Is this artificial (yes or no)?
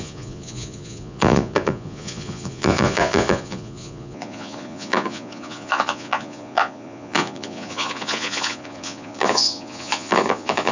yes